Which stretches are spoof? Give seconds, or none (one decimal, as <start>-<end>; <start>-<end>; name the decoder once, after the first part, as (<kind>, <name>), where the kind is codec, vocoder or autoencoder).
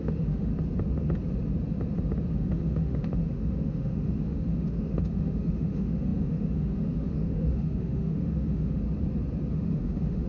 0.0-0.5 (autoencoder, DAC-VAE); 2.3-8.8; 9.5-10.3